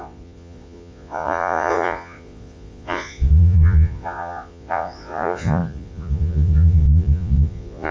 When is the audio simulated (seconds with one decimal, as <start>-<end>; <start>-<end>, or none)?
0.0-7.9